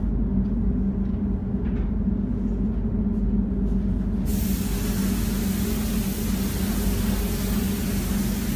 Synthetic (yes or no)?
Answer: no